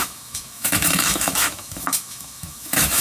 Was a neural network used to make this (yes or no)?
yes